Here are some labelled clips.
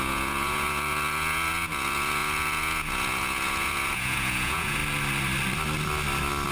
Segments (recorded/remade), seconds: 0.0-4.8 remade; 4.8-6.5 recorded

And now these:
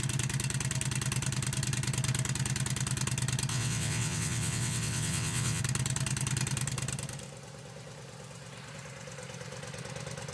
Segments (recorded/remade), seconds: 0.0-3.5 recorded; 3.5-5.6 remade; 5.6-10.3 recorded

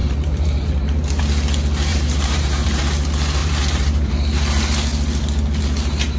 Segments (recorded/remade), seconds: 0.0-1.2 remade; 1.2-1.9 recorded; 1.9-2.8 remade; 2.8-3.4 recorded; 3.4-4.1 remade; 4.1-6.2 recorded

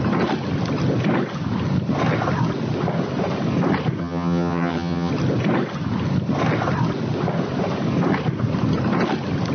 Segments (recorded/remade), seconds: 0.0-4.0 recorded; 4.0-5.1 remade; 5.1-9.5 recorded

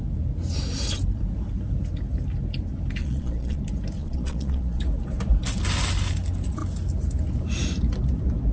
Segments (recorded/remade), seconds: 0.0-3.0 recorded; 3.0-3.6 remade; 3.6-4.0 recorded; 4.0-4.8 remade; 4.8-8.5 recorded

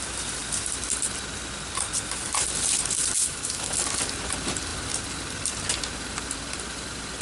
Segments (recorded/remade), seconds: 0.0-3.2 recorded; 3.2-3.7 remade; 3.7-7.2 recorded